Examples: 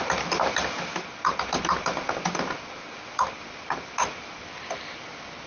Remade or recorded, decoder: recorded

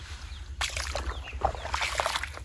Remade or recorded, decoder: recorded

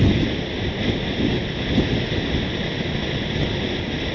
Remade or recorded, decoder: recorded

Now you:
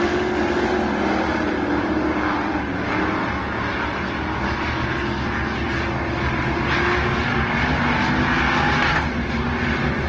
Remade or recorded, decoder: recorded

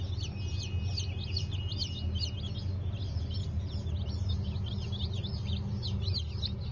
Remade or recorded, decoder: recorded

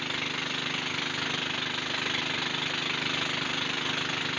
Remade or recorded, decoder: recorded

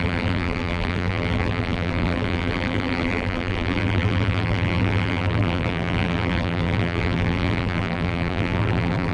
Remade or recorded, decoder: remade, vocoder, BigVGAN v2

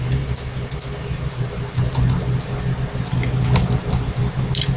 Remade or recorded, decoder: recorded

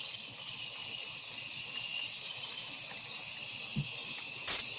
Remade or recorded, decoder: recorded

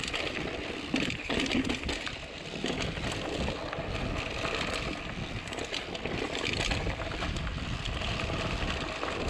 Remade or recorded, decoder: recorded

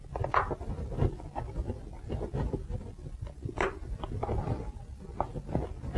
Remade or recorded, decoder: recorded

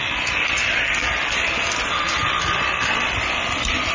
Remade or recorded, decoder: remade, vocoder, BigVGAN v2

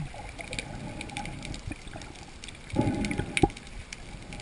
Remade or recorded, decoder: recorded